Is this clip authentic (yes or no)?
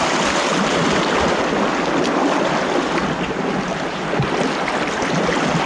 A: yes